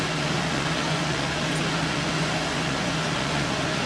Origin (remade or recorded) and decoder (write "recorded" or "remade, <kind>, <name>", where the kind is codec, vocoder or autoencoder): remade, vocoder, Vocos